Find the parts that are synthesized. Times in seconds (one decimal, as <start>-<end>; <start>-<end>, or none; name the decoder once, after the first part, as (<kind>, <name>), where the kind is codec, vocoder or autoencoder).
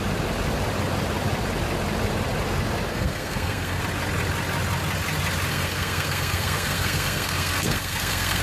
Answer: 2.9-3.8 (codec, SNAC); 5.5-8.4